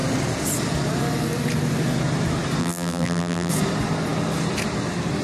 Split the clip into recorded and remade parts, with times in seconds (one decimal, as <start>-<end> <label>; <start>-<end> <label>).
0.0-2.6 recorded; 2.6-3.5 remade; 3.5-5.2 recorded

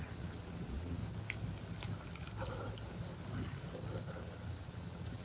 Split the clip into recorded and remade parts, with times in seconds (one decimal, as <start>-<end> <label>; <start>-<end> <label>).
0.0-1.0 remade; 1.0-4.1 recorded; 4.1-5.2 remade

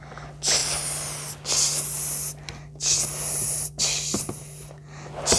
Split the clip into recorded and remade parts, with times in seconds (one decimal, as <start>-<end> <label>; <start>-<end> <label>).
0.0-5.4 recorded

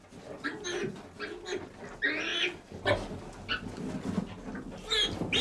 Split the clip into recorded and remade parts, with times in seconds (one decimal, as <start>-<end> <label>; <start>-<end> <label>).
0.0-5.4 recorded

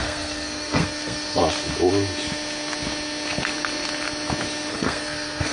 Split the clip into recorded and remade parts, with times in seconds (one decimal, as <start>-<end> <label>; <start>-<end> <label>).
0.0-1.4 remade; 1.4-4.7 recorded; 4.7-5.5 remade

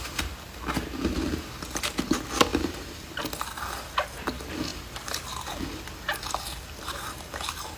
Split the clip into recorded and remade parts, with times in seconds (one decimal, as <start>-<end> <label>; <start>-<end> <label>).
0.0-2.5 recorded; 2.5-3.2 remade; 3.2-4.7 recorded; 4.7-5.8 remade; 5.8-7.8 recorded

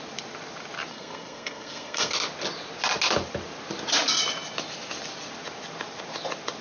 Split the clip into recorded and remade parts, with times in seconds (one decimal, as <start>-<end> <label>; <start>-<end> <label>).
0.0-0.9 recorded; 0.9-2.1 remade; 2.1-6.6 recorded